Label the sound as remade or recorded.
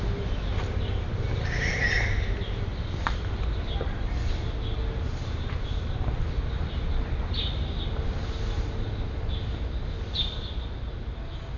recorded